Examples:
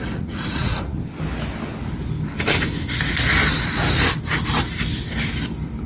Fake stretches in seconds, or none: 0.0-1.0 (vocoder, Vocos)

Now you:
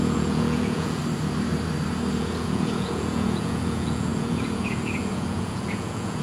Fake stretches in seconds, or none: 0.0-1.0 (vocoder, Vocos); 2.1-6.2

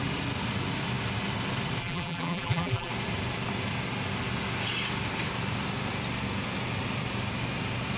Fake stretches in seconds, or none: 1.8-2.9 (vocoder, BigVGAN v2)

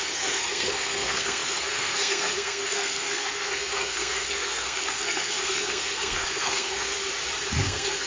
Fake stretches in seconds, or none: 0.0-6.9 (codec, SNAC); 7.5-8.1

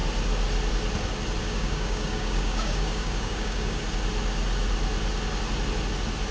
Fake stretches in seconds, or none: 1.4-3.8 (codec, DAC)

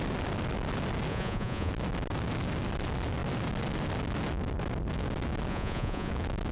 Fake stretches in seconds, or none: 1.1-1.7 (vocoder, Vocos); 5.5-6.1